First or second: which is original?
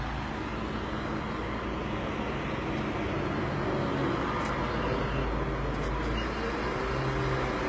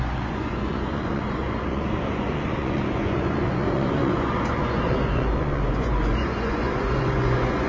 first